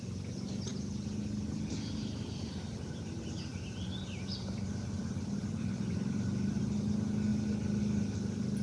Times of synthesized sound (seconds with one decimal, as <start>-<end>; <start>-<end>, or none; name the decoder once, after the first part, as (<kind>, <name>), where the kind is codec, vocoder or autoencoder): none